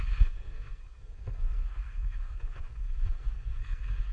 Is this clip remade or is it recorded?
remade